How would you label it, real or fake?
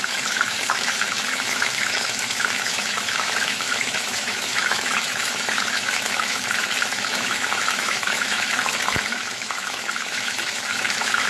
fake